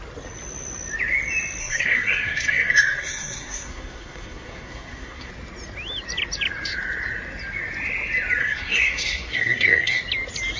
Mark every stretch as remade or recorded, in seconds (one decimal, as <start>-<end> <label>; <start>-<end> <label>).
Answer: 0.0-1.6 recorded; 1.6-5.3 remade; 5.3-8.4 recorded; 8.4-10.0 remade; 10.0-10.6 recorded